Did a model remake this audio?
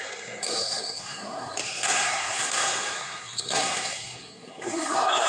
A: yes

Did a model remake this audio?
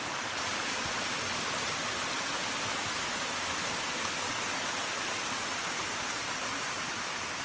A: no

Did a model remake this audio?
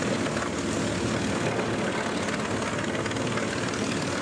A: no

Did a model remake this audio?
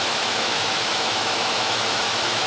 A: yes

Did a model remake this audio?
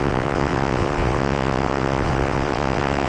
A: yes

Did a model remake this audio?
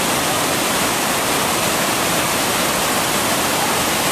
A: yes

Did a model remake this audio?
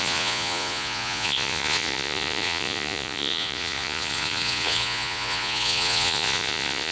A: yes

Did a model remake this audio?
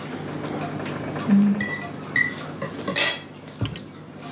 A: no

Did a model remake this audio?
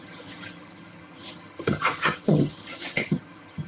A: yes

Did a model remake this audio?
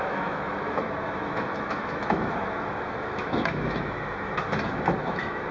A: yes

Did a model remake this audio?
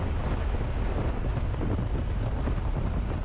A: no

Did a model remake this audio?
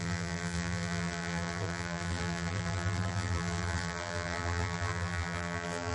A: yes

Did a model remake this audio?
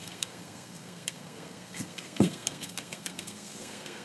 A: yes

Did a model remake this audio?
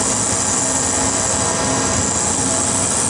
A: no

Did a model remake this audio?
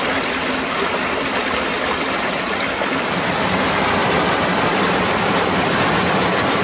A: no